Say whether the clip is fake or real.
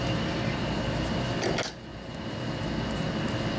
real